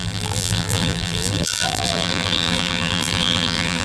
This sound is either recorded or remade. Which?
remade